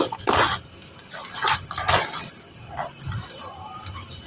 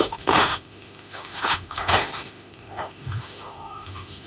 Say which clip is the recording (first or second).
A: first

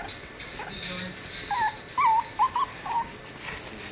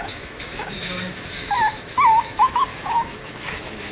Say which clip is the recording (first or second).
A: first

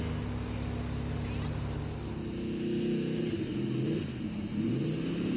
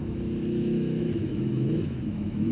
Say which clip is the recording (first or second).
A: first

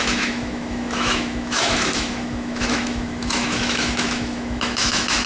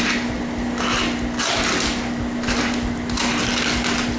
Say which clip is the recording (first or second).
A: second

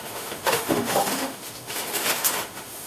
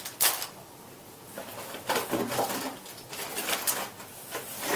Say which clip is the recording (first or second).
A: second